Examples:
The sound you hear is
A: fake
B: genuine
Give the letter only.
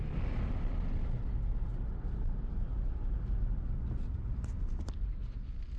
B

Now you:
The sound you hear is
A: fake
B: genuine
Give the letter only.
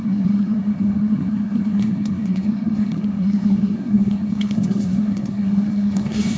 A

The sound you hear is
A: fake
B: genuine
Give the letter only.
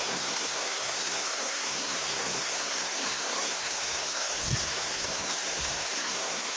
A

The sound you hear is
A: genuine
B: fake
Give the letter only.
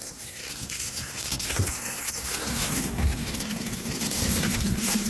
B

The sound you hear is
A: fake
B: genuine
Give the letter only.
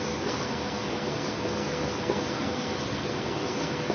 A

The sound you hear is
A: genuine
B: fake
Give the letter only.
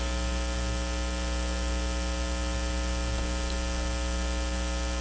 A